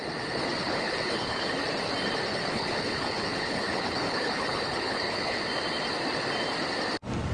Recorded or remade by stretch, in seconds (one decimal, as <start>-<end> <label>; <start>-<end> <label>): 0.0-0.6 recorded; 0.6-1.6 remade; 1.6-2.3 recorded; 2.3-5.4 remade; 5.4-7.3 recorded